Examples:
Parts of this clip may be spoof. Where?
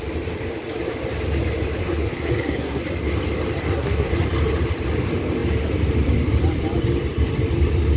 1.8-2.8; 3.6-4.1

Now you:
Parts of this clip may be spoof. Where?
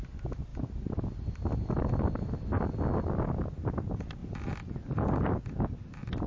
none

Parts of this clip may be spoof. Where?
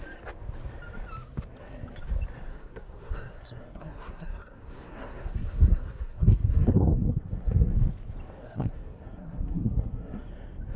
2.5-7.7; 8.4-10.3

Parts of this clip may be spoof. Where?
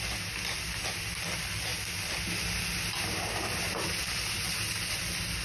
none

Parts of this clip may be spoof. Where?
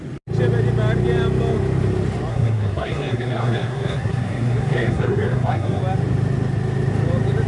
2.3-5.8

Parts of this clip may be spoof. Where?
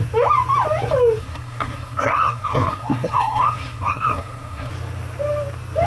1.2-4.7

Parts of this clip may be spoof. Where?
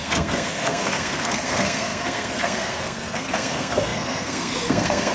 0.0-5.1